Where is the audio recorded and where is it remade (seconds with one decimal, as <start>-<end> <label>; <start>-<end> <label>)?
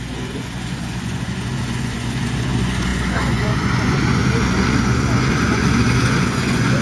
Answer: 0.0-6.8 remade